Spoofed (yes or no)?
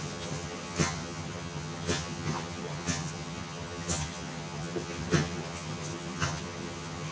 yes